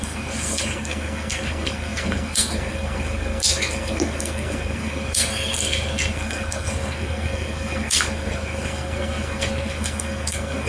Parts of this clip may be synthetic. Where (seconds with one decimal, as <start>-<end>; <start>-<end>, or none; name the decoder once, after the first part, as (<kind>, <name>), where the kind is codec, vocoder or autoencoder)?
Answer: 0.0-10.7 (codec, SNAC)